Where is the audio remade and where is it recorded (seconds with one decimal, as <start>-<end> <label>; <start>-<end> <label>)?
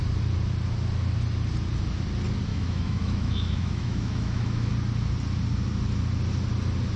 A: 0.0-2.5 recorded; 2.5-4.7 remade; 4.7-7.0 recorded